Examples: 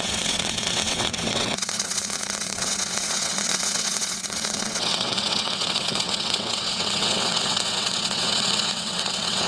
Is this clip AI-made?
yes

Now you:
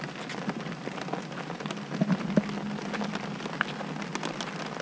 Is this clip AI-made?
no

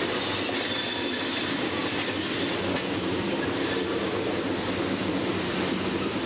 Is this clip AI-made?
no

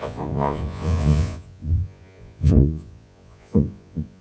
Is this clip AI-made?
yes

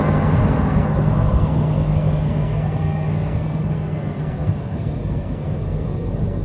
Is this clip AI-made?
yes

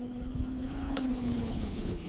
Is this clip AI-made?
yes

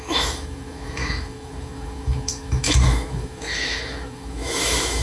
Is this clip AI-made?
yes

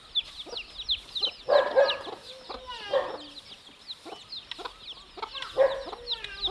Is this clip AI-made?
no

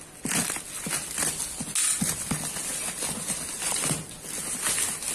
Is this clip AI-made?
no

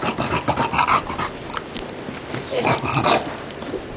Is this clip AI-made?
no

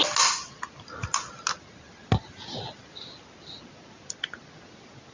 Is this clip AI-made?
no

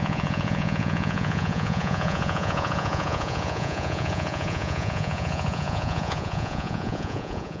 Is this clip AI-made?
yes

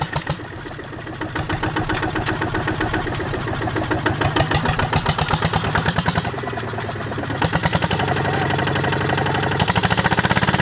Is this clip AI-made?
no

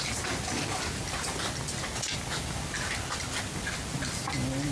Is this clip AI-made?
no